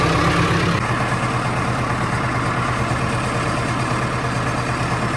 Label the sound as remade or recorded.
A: recorded